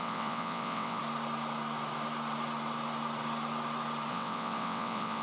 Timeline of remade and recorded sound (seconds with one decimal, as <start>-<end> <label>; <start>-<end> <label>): 0.0-1.0 remade; 1.0-4.1 recorded; 4.1-5.2 remade